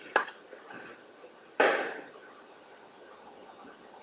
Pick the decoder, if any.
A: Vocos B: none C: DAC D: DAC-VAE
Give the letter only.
B